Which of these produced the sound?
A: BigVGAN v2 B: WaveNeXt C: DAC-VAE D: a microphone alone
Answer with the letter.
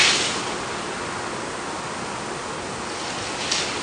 D